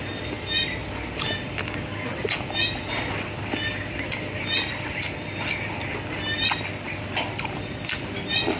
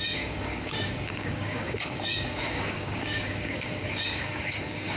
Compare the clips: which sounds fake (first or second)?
second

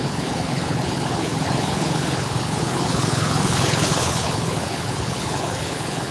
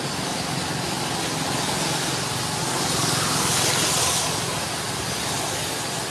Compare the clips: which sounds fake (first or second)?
first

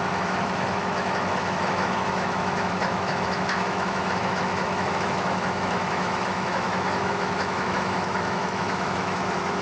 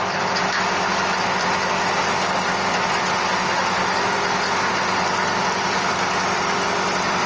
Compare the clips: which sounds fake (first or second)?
first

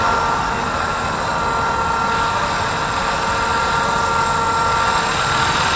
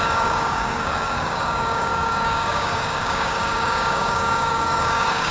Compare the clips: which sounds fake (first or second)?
second